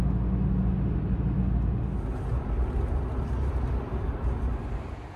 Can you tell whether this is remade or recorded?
recorded